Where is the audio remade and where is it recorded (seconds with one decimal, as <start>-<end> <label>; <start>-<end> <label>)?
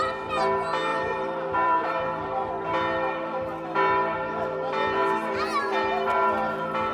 0.0-0.9 recorded; 0.9-2.0 remade; 2.0-6.9 recorded